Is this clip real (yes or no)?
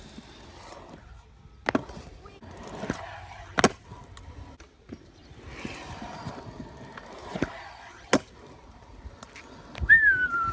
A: yes